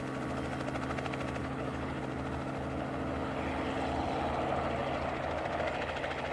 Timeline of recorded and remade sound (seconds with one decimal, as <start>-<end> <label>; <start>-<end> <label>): 0.0-1.4 recorded; 1.4-2.0 remade; 2.0-6.3 recorded